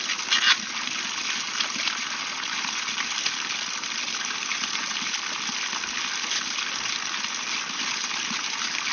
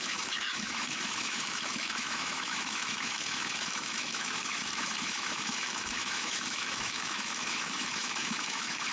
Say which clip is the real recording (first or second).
first